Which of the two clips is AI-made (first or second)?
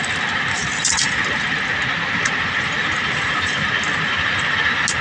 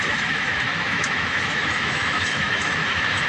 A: second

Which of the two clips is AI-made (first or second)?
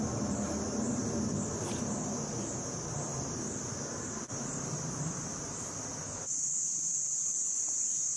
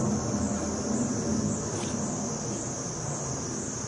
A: first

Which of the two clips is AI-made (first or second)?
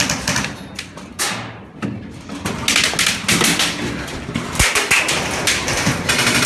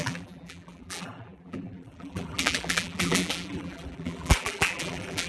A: second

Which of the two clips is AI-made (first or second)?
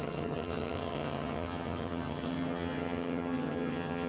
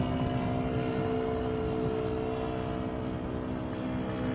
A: first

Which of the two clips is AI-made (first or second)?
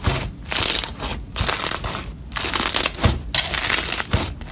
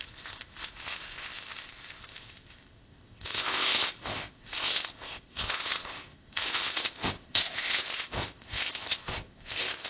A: second